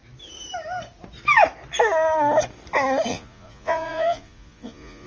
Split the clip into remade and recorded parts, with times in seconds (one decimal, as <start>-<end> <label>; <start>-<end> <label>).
0.0-3.1 recorded; 3.1-5.1 remade